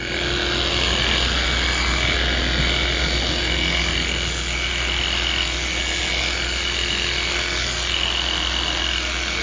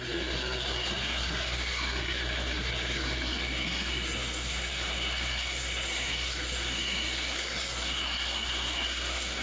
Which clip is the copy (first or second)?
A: second